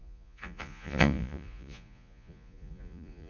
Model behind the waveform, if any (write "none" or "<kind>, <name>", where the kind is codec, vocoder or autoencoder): vocoder, Vocos